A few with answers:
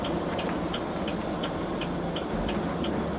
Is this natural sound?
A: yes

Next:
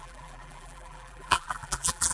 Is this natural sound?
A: no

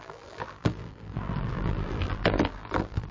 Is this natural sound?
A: no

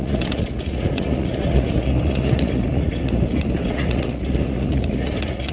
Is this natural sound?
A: no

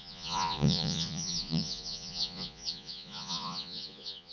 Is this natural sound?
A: no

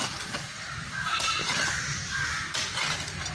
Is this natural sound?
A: yes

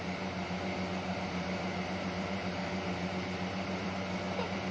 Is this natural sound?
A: no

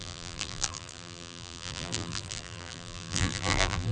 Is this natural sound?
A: no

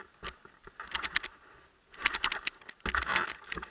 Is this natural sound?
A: yes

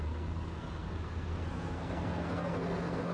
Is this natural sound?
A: no